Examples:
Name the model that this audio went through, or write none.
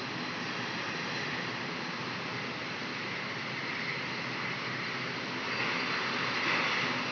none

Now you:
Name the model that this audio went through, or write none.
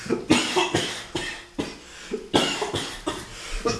none